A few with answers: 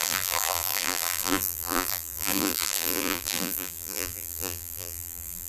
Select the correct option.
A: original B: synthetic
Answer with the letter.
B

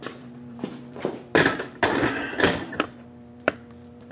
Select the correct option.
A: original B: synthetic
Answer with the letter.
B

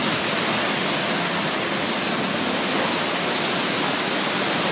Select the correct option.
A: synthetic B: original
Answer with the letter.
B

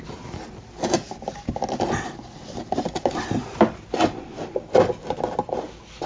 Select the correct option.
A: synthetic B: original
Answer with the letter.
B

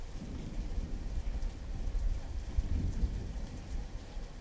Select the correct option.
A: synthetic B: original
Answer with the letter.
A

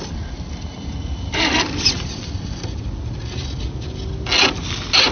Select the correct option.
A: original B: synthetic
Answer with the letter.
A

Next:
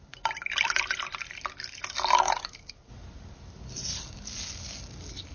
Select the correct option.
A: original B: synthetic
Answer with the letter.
A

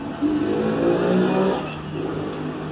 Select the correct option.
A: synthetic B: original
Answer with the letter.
B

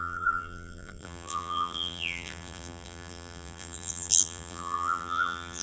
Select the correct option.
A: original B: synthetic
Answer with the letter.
B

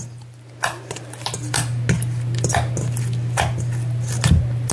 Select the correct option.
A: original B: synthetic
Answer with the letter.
A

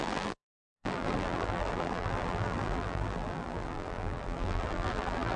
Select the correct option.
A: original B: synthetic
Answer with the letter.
B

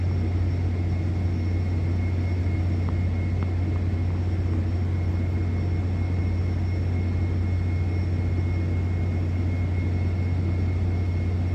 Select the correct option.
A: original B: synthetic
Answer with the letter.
A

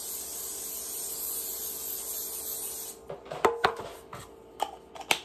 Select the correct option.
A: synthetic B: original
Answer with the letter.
B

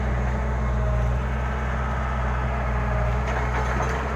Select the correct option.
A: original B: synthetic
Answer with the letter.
A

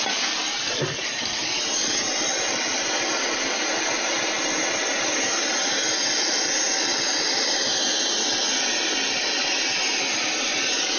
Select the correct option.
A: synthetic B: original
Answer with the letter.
B